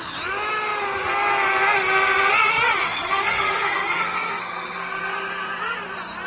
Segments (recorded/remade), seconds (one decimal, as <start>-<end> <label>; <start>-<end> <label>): 0.0-2.8 recorded; 2.8-5.1 remade; 5.1-6.3 recorded